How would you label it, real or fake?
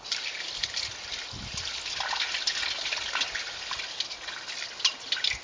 real